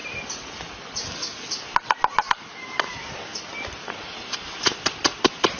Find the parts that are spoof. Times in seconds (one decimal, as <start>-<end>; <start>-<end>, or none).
none